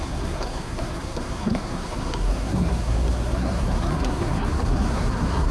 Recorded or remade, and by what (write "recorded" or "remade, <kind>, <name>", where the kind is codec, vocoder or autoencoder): remade, codec, SNAC